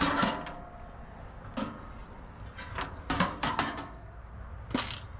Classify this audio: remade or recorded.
recorded